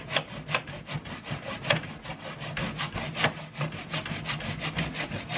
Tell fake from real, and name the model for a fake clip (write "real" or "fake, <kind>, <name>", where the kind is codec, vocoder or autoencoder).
real